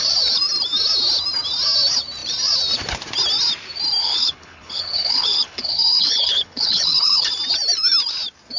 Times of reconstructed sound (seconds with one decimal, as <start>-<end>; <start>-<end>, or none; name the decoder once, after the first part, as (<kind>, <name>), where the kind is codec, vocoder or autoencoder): 4.0-7.3 (codec, HILCodec)